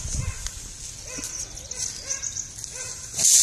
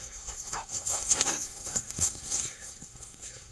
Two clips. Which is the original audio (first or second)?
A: first